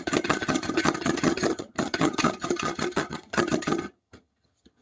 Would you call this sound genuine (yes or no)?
no